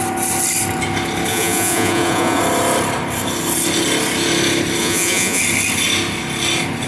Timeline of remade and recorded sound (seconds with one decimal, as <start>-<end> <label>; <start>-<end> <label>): 0.0-1.3 recorded; 1.3-2.4 remade; 2.4-4.8 recorded; 4.8-5.4 remade; 5.4-6.9 recorded